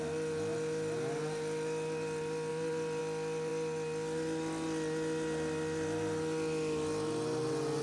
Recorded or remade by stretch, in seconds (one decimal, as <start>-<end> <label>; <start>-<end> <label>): 0.0-2.5 recorded; 2.5-3.0 remade; 3.0-7.8 recorded